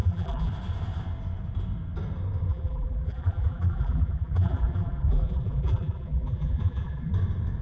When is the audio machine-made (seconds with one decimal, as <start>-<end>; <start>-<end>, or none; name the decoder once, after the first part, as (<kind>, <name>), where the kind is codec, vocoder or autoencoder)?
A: 0.0-0.5 (vocoder, BigVGAN v2); 2.5-7.1

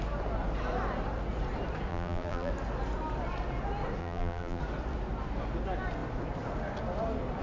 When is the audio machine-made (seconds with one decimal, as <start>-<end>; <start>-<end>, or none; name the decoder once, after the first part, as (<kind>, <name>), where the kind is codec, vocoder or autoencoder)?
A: 1.9-2.5 (vocoder, BigVGAN v2); 4.0-4.6